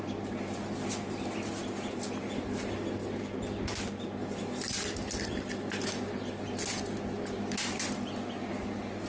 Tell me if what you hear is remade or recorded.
recorded